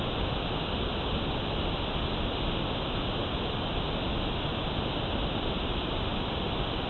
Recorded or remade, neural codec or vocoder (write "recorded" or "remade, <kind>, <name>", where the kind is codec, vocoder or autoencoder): recorded